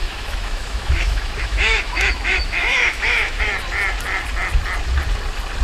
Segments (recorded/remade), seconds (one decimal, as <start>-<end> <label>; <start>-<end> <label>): 0.0-3.4 remade; 3.4-5.6 recorded